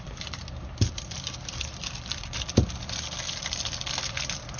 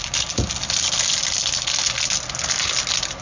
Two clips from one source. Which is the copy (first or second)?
first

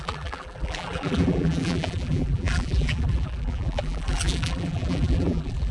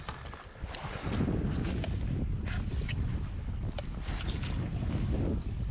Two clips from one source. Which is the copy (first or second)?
first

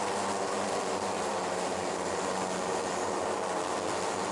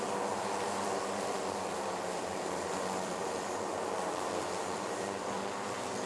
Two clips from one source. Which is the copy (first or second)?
second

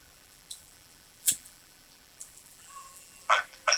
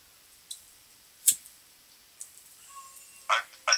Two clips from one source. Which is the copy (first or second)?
first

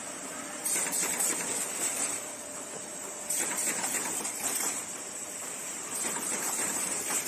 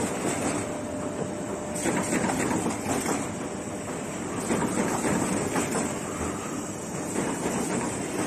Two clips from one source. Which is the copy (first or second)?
first